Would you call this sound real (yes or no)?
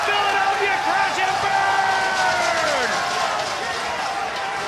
yes